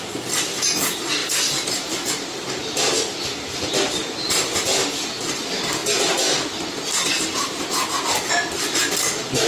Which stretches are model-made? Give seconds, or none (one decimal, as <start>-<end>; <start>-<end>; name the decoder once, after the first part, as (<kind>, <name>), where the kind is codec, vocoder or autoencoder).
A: 0.0-5.8 (vocoder, BigVGAN v2); 8.5-9.5